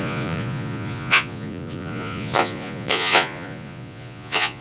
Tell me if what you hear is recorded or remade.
remade